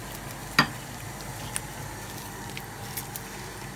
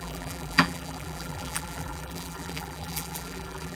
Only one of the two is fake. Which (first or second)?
second